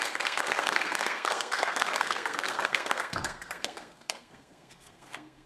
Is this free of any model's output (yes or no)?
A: no